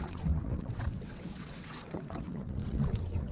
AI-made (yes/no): yes